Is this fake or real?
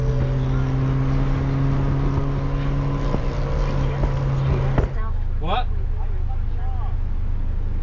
real